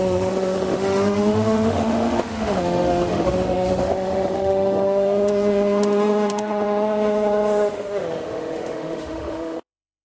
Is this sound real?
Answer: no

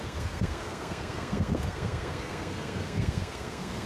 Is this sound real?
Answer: no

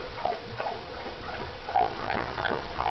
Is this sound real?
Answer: no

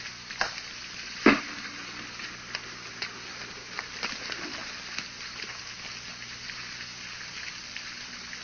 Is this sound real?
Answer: yes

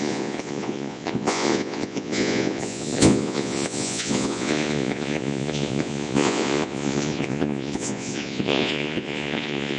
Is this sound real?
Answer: no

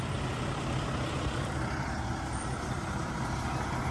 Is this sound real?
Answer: yes